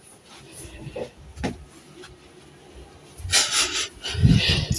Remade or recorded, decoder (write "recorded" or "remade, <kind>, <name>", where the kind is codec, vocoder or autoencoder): recorded